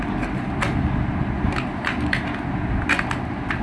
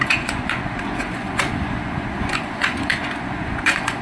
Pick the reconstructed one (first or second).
second